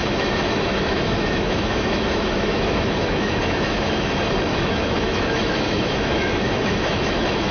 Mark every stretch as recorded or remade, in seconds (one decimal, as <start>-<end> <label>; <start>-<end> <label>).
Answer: 0.0-4.1 remade; 4.1-4.5 recorded; 4.5-7.5 remade